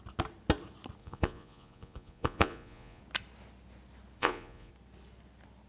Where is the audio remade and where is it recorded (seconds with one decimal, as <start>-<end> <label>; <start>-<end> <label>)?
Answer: 0.0-1.0 recorded; 1.0-3.0 remade; 3.0-4.2 recorded; 4.2-4.7 remade; 4.7-5.7 recorded